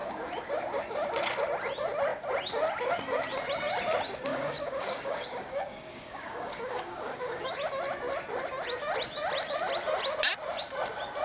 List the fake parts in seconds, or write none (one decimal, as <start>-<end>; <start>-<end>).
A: 4.3-7.5